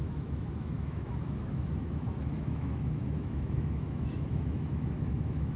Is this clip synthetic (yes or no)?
yes